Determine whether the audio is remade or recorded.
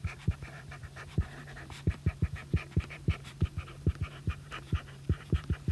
remade